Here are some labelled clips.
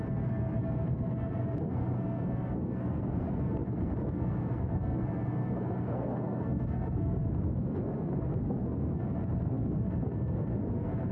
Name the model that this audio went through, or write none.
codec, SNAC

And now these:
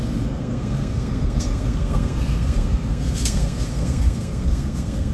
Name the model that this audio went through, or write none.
codec, SNAC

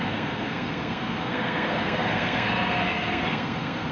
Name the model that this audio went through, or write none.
codec, SNAC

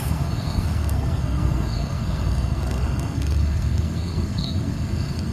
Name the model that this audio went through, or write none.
codec, SNAC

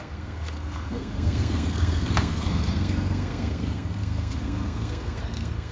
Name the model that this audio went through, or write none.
codec, SNAC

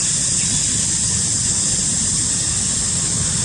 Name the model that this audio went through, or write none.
none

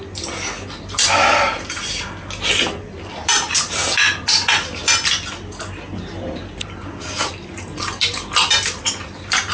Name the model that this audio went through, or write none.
none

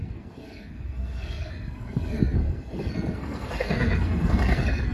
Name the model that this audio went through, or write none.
codec, SNAC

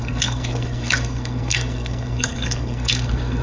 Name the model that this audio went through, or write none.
codec, SNAC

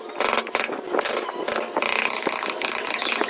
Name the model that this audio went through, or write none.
none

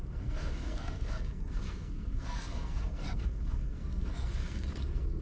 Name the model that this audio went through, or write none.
codec, SNAC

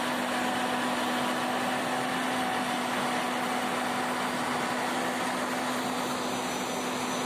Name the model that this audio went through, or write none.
none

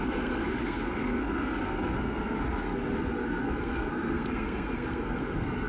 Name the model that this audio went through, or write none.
codec, SNAC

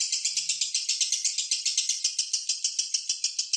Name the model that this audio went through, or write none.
none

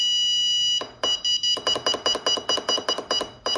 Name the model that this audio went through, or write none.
none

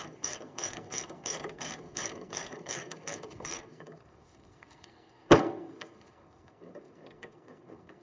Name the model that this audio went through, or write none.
codec, SNAC